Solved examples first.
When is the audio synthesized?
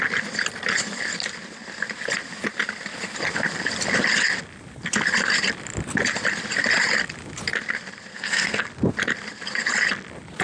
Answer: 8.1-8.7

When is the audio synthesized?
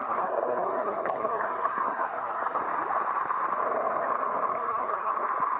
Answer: 0.0-2.6; 4.5-5.1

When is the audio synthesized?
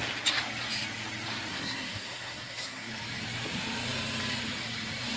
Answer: 1.5-2.9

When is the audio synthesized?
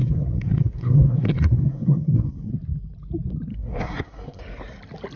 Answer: 0.0-2.5; 3.5-4.4